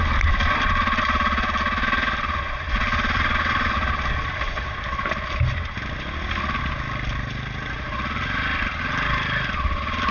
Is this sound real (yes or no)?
yes